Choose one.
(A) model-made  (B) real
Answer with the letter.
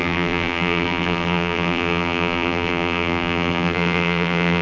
A